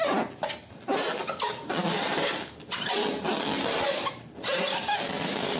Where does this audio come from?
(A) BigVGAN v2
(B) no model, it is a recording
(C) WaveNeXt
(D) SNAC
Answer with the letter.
B